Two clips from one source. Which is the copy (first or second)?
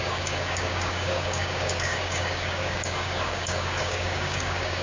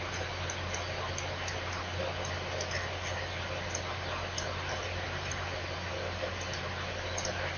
first